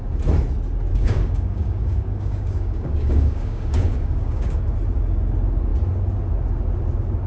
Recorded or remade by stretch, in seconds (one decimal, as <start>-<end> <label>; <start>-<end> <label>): 0.0-0.9 recorded; 0.9-4.6 remade; 4.6-7.3 recorded